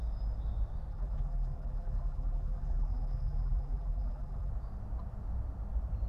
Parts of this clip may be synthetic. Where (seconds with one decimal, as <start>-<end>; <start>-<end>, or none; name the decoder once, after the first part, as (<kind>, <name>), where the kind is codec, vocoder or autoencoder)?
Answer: 0.9-4.5 (vocoder, BigVGAN v2)